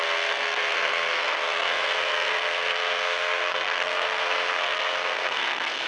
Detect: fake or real fake